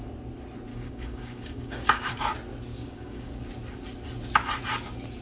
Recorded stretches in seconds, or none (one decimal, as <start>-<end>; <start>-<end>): 0.0-0.7; 2.1-2.7; 3.3-5.2